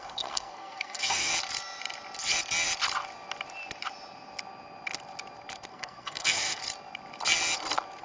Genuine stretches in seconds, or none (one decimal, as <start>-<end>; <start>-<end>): 1.3-5.7; 6.6-8.0